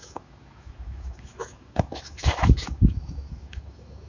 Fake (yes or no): yes